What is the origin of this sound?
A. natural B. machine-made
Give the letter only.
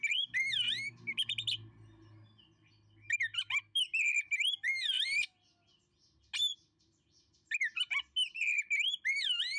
A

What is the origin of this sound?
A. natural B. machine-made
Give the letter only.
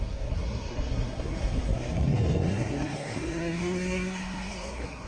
B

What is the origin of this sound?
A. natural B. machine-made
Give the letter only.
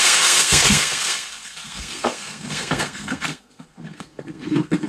B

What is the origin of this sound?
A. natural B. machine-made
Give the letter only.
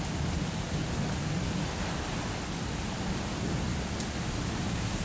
A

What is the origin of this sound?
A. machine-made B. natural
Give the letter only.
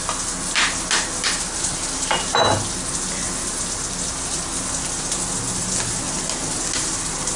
B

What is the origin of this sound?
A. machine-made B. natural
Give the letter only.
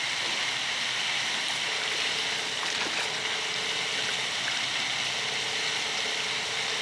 B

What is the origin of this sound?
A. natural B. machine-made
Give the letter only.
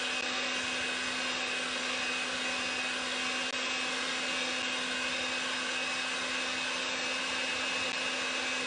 A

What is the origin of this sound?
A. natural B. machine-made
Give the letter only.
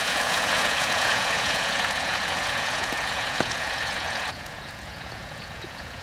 B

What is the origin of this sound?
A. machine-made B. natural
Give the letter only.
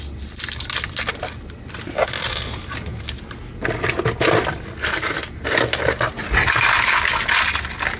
B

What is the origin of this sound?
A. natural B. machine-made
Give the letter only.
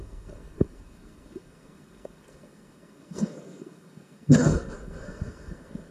B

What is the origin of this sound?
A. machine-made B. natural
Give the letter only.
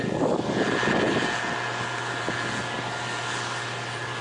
B